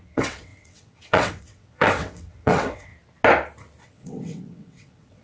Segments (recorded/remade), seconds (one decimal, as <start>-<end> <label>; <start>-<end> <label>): 0.0-2.9 remade; 2.9-3.8 recorded; 3.8-5.2 remade